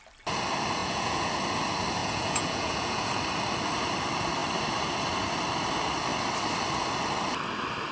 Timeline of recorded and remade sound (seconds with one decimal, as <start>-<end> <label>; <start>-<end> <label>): 0.0-0.8 recorded; 0.8-1.3 remade; 1.3-2.0 recorded; 2.0-3.1 remade; 3.1-7.9 recorded